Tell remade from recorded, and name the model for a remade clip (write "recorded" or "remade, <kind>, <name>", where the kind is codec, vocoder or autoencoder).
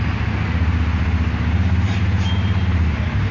recorded